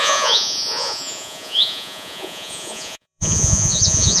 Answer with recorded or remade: remade